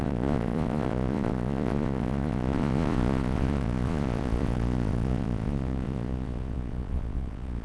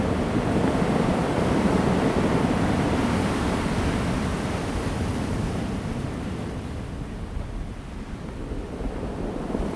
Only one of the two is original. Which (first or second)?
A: second